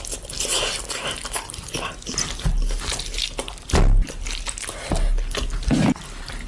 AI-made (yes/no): no